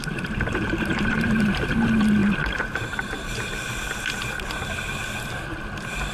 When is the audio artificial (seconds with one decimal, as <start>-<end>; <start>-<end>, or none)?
0.0-1.8; 2.2-3.7